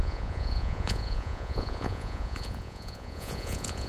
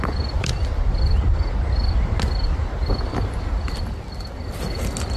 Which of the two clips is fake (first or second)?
first